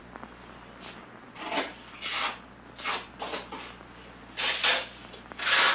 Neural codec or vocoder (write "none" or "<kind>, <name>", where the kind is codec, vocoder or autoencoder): none